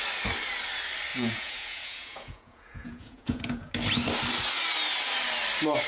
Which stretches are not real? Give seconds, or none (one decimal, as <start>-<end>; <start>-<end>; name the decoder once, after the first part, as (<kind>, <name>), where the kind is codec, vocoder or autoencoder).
1.1-3.7 (vocoder, Vocos)